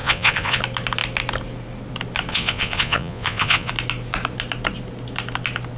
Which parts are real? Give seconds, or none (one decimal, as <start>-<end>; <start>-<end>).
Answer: 0.6-2.3; 3.7-5.8